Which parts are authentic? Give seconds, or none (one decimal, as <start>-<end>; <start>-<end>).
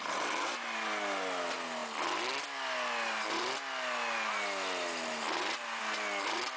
0.0-6.6